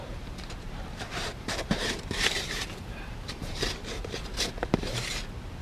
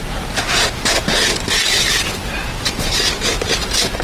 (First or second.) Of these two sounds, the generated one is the first